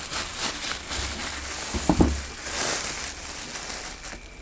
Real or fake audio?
real